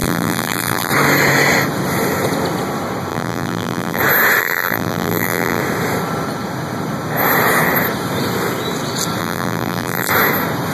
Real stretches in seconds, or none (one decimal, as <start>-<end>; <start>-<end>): 0.9-3.1; 4.0-4.4; 5.6-9.2; 10.1-10.7